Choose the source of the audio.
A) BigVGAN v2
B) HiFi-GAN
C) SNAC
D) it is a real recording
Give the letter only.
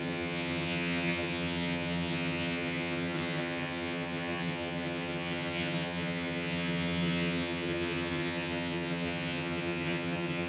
B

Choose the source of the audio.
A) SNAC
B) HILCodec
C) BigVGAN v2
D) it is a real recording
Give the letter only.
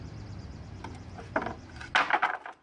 D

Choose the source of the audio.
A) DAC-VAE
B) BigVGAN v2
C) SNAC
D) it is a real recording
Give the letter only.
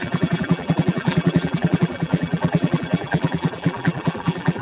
B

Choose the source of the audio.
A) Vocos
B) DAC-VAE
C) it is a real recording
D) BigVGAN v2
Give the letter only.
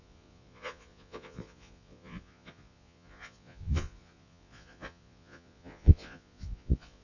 A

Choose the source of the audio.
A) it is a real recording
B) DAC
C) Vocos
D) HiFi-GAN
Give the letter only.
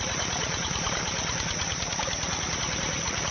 C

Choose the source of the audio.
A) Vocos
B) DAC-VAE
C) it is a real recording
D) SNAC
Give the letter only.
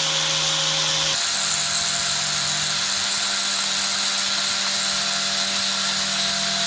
C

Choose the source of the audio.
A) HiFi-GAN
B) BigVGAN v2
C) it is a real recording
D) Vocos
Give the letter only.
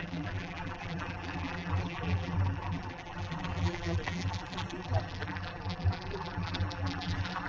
B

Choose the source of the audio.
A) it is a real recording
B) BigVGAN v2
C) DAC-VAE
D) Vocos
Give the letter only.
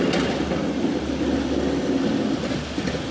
A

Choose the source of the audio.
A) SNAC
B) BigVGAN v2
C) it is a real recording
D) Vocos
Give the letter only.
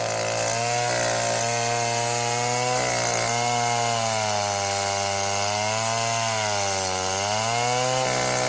C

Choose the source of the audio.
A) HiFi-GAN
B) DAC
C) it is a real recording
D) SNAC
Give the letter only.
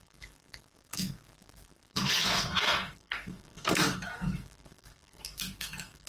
D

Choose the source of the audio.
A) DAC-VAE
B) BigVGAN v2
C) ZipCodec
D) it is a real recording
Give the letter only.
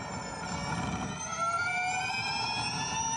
D